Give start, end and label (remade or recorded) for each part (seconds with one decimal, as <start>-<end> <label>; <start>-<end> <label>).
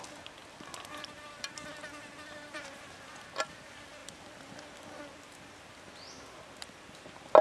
0.0-0.4 recorded; 0.4-2.6 remade; 2.6-7.4 recorded